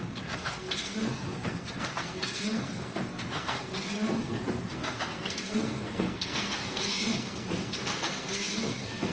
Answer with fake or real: fake